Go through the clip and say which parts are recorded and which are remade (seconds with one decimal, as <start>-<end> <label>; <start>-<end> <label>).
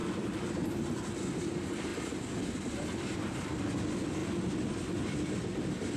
0.0-4.2 remade; 4.2-6.0 recorded